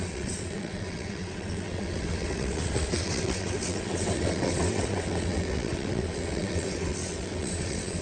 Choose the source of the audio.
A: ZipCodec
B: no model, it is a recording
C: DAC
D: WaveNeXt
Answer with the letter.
D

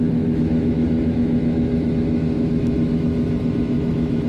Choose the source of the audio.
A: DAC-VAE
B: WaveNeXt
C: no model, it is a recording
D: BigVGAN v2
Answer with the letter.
A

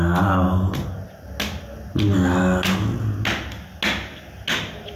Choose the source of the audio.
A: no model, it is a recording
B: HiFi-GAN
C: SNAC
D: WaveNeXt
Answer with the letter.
A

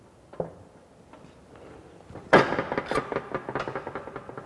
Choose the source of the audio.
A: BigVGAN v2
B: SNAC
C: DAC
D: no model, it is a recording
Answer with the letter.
D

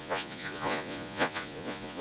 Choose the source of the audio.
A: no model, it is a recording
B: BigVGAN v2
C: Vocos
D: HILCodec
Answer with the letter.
C